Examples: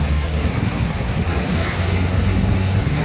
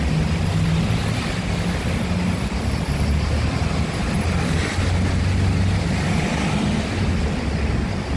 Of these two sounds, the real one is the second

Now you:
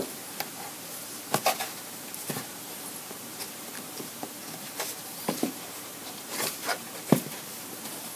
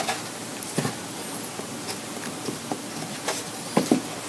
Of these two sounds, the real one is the second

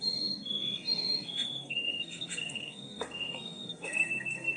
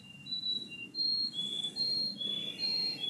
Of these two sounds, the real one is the second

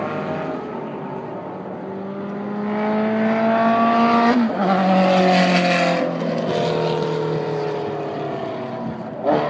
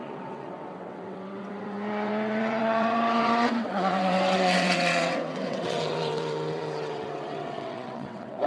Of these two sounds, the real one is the first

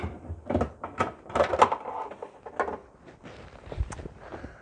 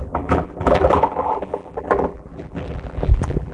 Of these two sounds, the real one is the first